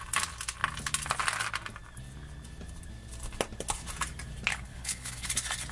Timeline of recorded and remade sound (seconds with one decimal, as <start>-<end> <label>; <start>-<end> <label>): 0.0-4.5 recorded; 4.5-5.3 remade; 5.3-5.7 recorded